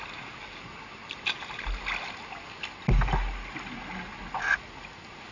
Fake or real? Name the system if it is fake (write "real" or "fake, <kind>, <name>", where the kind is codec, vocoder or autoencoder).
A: real